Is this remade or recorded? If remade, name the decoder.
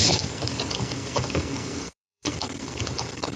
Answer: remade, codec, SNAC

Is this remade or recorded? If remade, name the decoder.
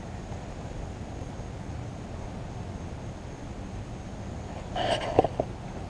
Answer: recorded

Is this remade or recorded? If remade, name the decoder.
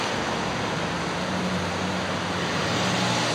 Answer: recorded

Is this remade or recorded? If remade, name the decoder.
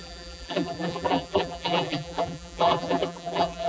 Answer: remade, vocoder, BigVGAN v2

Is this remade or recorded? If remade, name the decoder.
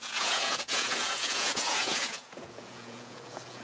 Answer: remade, vocoder, Vocos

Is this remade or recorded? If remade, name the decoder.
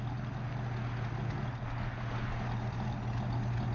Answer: recorded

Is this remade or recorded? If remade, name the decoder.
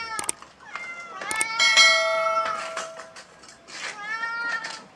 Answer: recorded